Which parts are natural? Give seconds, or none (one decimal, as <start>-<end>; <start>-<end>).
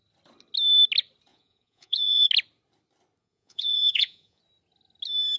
0.0-1.3; 2.3-3.2; 4.4-5.4